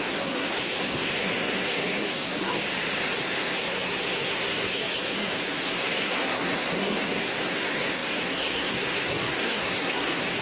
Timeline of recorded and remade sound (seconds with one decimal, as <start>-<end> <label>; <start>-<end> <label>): 0.0-2.5 remade; 2.5-3.1 recorded; 3.1-10.4 remade